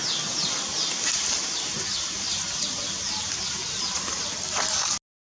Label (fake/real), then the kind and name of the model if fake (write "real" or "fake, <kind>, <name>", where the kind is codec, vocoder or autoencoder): real